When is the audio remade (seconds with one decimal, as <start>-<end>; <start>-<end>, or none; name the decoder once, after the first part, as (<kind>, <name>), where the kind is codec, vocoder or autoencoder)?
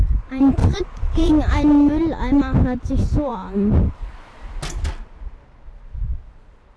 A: 0.6-1.3 (vocoder, Vocos)